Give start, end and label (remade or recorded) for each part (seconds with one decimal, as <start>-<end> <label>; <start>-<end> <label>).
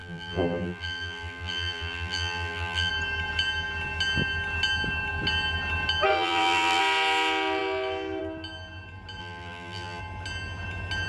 0.0-2.9 remade; 2.9-6.1 recorded; 6.1-6.8 remade; 6.8-9.2 recorded; 9.2-10.0 remade; 10.0-11.1 recorded